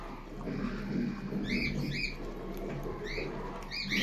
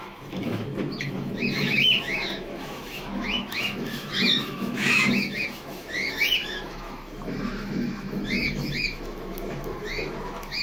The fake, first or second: second